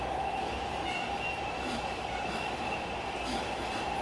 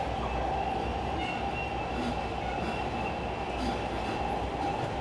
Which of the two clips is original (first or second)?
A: second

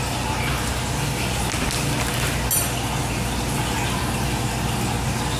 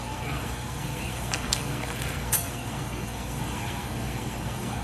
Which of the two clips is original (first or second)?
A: first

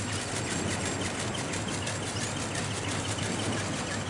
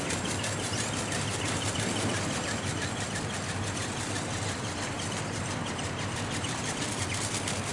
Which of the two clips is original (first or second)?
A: first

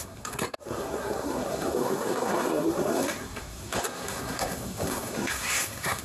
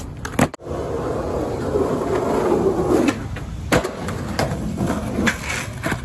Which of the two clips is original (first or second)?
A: second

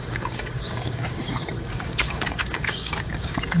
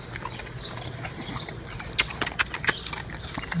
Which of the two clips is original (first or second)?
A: second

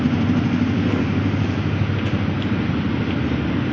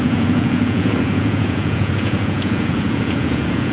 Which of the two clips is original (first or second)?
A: first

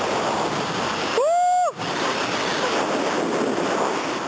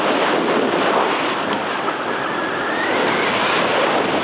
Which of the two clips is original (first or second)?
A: first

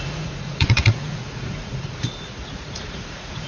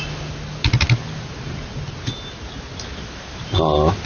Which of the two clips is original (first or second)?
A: second